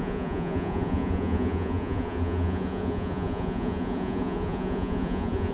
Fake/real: fake